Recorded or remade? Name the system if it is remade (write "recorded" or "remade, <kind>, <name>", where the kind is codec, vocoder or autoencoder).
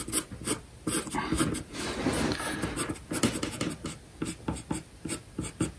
recorded